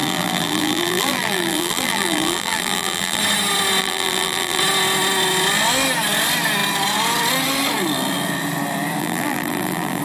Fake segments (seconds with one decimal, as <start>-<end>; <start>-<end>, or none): 0.0-3.2; 3.8-4.6; 9.0-10.0